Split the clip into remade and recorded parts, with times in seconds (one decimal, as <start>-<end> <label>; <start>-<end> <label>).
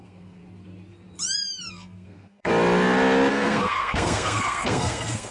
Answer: 0.0-0.4 remade; 0.4-1.7 recorded; 1.7-2.5 remade; 2.5-3.3 recorded; 3.3-5.3 remade